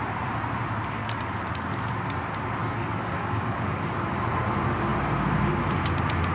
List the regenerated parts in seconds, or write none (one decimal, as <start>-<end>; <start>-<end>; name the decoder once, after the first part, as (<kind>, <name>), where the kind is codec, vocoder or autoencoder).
1.0-1.9 (codec, DAC); 2.6-3.8